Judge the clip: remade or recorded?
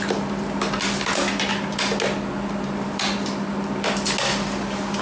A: recorded